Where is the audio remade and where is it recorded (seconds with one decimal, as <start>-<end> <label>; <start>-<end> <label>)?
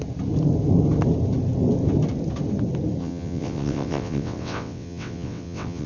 0.0-3.0 recorded; 3.0-5.9 remade